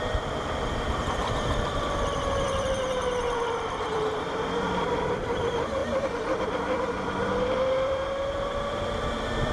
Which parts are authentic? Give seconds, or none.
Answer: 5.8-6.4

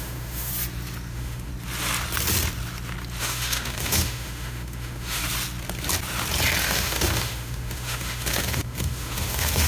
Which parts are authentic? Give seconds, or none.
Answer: 0.5-1.1; 1.5-3.2; 5.2-6.6